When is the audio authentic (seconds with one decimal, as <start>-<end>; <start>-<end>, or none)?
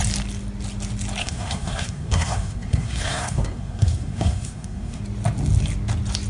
0.0-1.2; 5.0-6.3